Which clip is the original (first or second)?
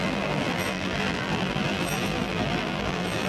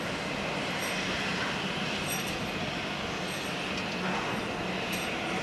second